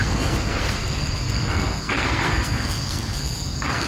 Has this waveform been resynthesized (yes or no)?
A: yes